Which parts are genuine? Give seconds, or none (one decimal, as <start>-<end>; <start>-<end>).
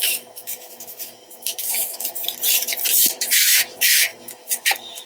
2.2-3.0